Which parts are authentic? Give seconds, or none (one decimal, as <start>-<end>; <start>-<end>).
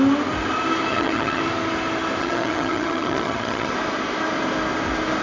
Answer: 0.0-0.9; 1.4-2.2; 3.7-5.2